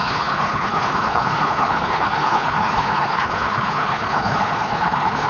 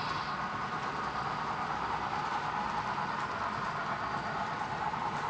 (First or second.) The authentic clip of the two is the second